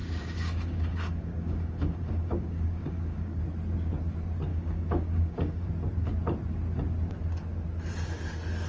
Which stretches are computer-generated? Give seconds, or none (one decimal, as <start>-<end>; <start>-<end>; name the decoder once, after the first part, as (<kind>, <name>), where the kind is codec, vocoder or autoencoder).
0.0-3.4 (codec, DAC); 4.5-5.7